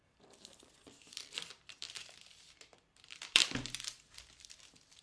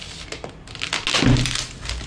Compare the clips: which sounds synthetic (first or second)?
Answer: first